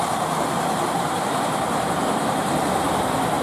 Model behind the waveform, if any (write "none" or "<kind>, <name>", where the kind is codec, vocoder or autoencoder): vocoder, BigVGAN v2